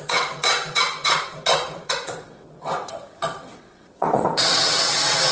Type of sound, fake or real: fake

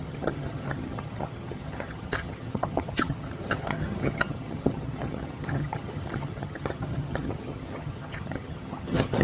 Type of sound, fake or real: fake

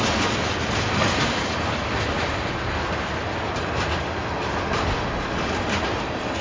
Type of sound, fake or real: real